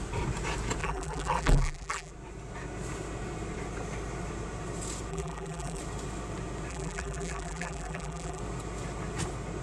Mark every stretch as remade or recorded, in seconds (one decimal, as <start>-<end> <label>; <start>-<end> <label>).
0.0-0.8 recorded; 0.8-2.1 remade; 2.1-5.1 recorded; 5.1-5.8 remade; 5.8-6.7 recorded; 6.7-8.4 remade; 8.4-9.6 recorded